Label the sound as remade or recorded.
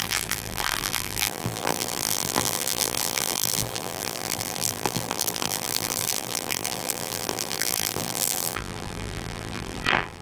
remade